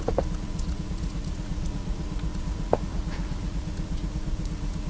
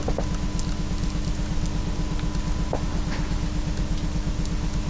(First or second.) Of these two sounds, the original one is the second